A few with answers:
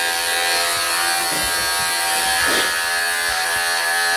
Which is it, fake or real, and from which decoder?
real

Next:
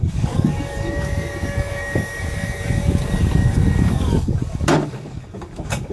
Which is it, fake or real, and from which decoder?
fake, codec, DAC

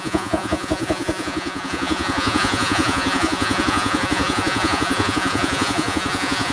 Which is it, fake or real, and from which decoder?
fake, vocoder, Vocos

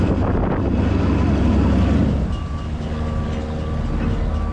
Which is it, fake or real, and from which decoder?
real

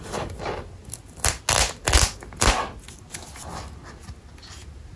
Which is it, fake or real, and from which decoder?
real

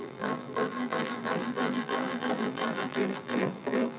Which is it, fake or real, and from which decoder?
fake, vocoder, BigVGAN v2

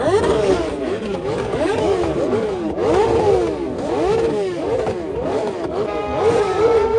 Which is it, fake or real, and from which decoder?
fake, codec, DAC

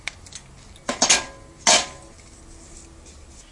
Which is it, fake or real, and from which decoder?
real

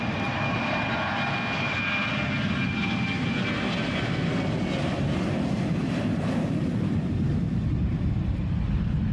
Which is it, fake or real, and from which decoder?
real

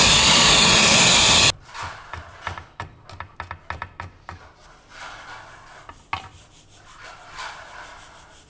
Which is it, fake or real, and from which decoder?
real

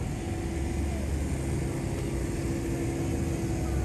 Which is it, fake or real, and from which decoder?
real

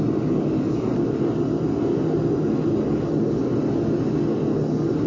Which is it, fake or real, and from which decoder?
real